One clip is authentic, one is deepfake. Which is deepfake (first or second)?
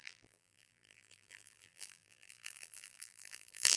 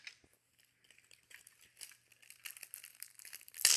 first